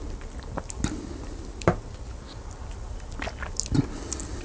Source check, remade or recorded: recorded